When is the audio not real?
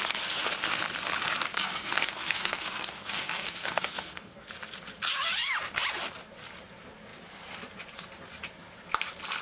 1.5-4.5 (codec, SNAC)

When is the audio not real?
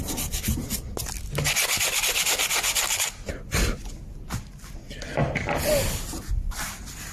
none